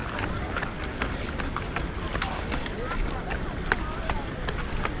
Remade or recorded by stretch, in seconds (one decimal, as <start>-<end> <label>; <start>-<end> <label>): 0.0-5.0 recorded